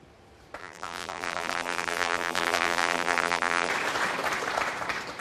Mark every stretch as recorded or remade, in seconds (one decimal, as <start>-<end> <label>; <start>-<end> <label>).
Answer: 0.0-0.6 recorded; 0.6-3.7 remade; 3.7-5.2 recorded